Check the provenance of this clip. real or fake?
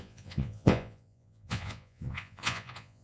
fake